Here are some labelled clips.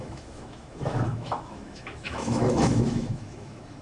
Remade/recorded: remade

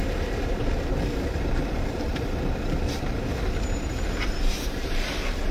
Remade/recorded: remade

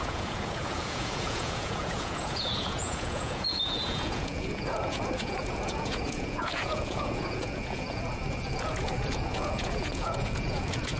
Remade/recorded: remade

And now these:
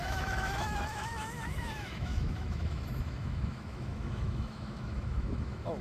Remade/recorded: remade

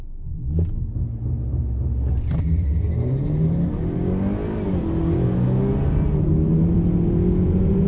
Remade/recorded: recorded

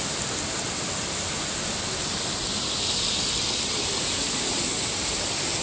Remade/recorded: recorded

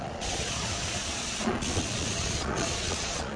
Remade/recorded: remade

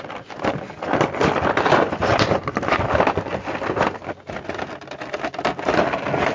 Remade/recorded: recorded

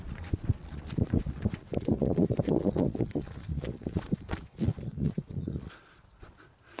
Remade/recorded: remade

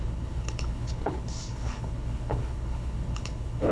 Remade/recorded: remade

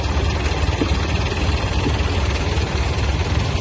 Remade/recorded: recorded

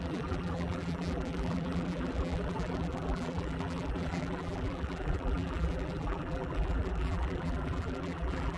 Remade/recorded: remade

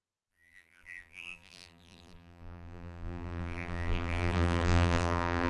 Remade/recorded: remade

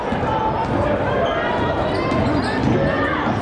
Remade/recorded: recorded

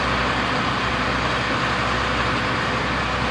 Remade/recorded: recorded